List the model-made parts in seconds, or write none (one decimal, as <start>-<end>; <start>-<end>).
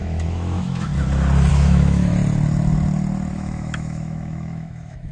0.0-0.9; 1.5-2.1; 3.3-5.1